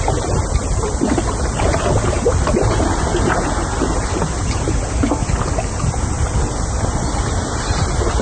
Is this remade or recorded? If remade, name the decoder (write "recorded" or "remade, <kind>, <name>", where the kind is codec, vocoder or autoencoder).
recorded